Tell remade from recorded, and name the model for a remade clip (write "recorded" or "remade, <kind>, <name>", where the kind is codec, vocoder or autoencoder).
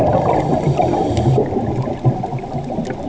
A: recorded